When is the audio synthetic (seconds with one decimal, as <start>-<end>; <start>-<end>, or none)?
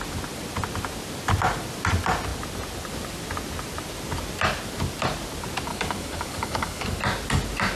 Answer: 5.7-7.0